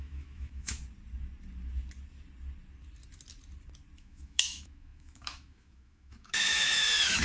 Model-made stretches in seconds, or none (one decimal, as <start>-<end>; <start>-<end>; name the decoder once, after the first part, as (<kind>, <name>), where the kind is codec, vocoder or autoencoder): 0.0-0.8 (autoencoder, DAC-VAE); 4.0-7.2